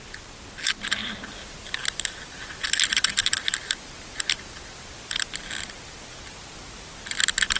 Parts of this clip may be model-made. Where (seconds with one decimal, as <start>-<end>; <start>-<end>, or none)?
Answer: none